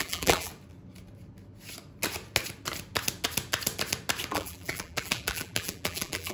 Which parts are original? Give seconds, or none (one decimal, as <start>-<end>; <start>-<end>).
0.5-4.3